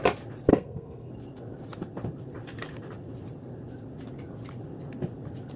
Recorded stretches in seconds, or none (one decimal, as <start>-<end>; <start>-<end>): 0.0-0.5; 1.1-5.6